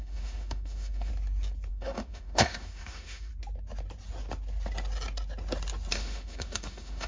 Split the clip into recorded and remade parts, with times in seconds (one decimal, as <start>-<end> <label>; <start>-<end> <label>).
0.0-1.1 remade; 1.1-1.7 recorded; 1.7-3.3 remade; 3.3-5.9 recorded; 5.9-7.1 remade